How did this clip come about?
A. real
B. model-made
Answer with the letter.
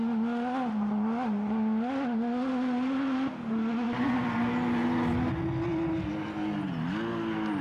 A